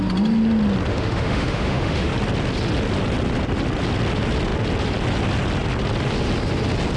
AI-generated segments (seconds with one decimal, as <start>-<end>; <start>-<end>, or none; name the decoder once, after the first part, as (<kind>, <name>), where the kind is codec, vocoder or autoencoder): 0.9-2.1 (autoencoder, DAC-VAE)